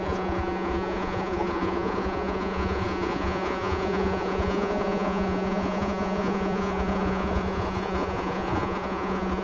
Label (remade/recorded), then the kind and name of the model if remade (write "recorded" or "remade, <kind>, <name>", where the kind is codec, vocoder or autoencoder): remade, vocoder, Vocos